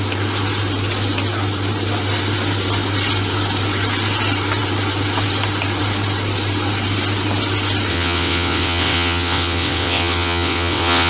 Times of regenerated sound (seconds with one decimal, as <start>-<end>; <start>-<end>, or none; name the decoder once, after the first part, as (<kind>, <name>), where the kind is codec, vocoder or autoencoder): 7.9-11.1 (vocoder, WaveNeXt)